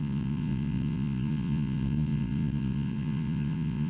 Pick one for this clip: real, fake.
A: fake